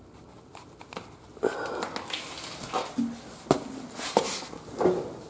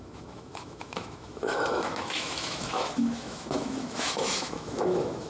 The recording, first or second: first